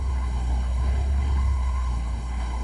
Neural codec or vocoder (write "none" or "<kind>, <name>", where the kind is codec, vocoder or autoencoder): codec, SNAC